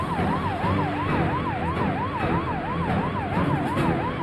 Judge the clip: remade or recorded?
recorded